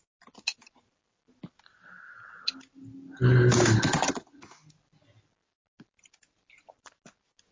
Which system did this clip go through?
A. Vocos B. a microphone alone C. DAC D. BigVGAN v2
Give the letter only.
B